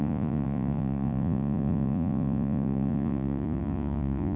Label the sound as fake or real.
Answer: fake